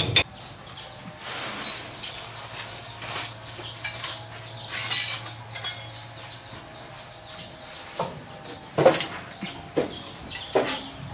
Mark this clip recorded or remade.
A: recorded